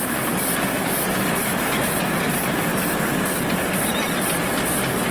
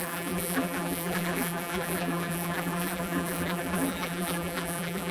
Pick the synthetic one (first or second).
second